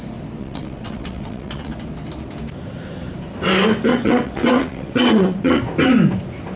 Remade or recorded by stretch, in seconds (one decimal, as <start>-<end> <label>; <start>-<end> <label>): 0.0-0.4 recorded; 0.4-1.7 remade; 1.7-3.9 recorded; 3.9-5.6 remade; 5.6-6.6 recorded